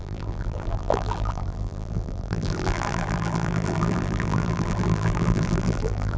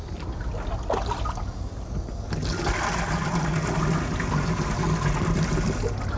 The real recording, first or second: second